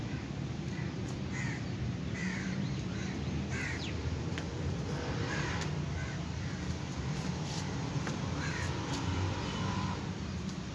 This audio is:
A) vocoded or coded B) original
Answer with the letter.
A